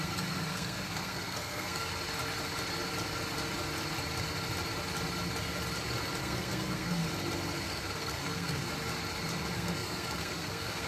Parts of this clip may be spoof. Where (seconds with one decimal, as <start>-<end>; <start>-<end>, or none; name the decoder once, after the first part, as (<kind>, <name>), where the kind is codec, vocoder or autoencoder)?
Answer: 0.0-1.9 (codec, SNAC); 6.2-7.0; 7.6-8.7; 9.4-10.9